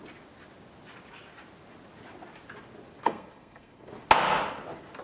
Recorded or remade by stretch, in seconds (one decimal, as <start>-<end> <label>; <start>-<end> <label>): 0.0-3.0 recorded; 3.0-3.9 remade; 3.9-5.0 recorded